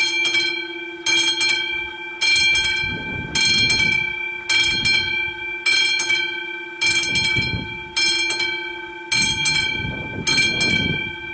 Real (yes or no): yes